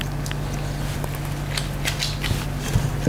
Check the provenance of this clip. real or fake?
real